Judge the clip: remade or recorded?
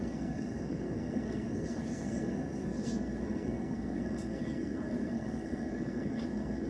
remade